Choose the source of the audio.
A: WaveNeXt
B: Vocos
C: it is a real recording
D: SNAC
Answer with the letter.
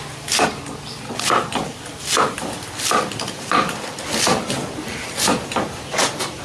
C